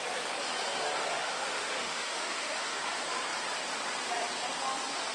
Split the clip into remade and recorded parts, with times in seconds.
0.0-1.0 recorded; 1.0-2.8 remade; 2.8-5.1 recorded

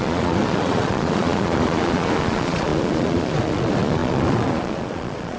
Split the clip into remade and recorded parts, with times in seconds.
0.0-5.4 remade

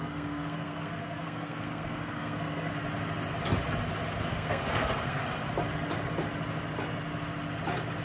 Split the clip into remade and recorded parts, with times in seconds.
0.0-2.7 remade; 2.7-4.3 recorded; 4.3-5.2 remade; 5.2-8.0 recorded

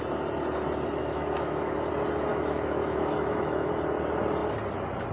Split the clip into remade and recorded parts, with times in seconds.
0.0-1.0 recorded; 1.0-1.9 remade; 1.9-2.3 recorded; 2.3-3.7 remade; 3.7-5.1 recorded

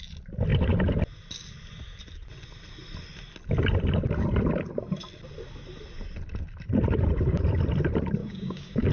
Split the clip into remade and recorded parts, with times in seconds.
0.0-8.2 recorded; 8.2-8.9 remade

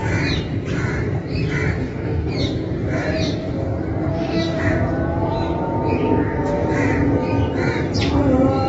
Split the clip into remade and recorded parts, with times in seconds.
0.0-1.8 recorded; 1.8-2.3 remade; 2.3-4.1 recorded; 4.1-4.6 remade; 4.6-8.7 recorded

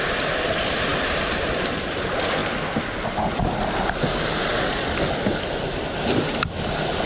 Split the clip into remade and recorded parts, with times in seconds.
0.0-7.1 recorded